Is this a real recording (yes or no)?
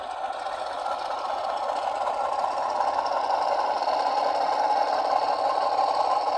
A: yes